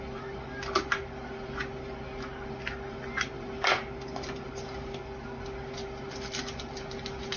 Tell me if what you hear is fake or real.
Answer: real